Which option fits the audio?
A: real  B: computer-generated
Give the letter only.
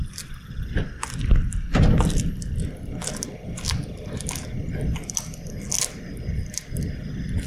A